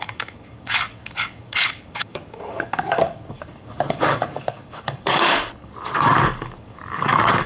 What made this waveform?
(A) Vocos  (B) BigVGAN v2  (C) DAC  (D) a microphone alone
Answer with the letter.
C